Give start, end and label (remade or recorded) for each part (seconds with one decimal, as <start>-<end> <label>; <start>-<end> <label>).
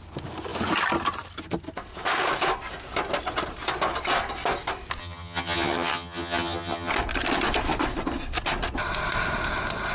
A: 0.0-5.0 recorded; 5.0-6.9 remade; 6.9-9.9 recorded